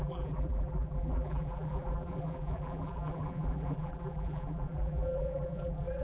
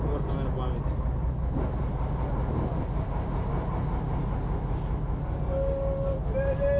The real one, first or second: second